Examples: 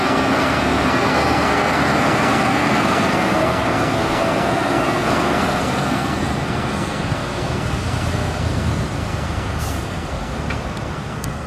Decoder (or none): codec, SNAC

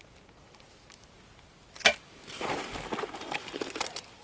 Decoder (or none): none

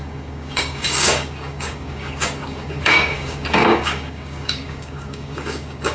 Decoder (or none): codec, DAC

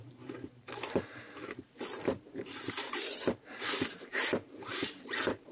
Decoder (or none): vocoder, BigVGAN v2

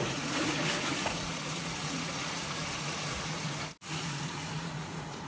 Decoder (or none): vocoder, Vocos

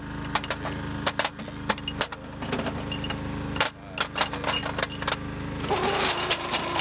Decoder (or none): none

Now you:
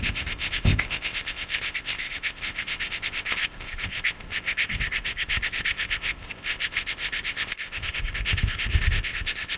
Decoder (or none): codec, ZipCodec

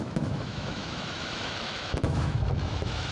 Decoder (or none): autoencoder, DAC-VAE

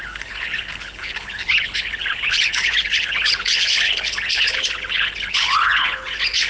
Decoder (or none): codec, HILCodec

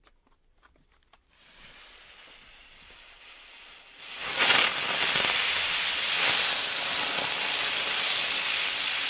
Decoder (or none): vocoder, BigVGAN v2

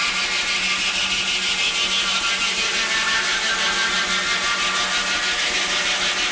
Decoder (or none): none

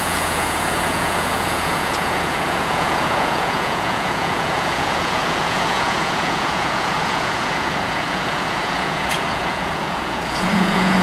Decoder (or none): vocoder, Vocos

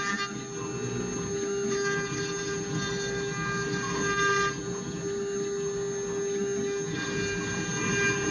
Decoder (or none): none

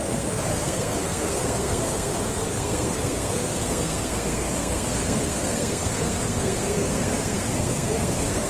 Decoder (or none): codec, SNAC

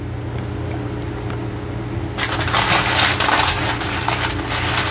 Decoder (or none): none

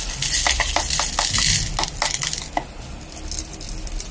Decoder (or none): none